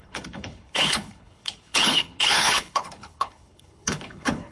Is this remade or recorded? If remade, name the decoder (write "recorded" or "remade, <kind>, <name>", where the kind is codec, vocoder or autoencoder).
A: remade, codec, HILCodec